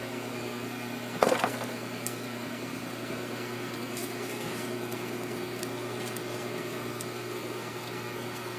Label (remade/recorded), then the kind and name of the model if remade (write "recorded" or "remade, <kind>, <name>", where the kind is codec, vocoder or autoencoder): remade, codec, SNAC